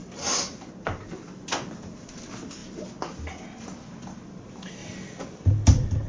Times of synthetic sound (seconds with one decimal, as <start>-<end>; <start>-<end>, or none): none